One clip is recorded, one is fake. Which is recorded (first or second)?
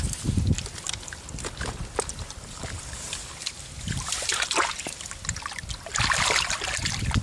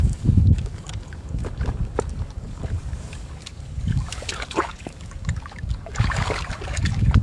first